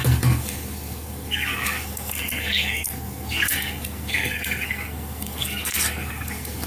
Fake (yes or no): yes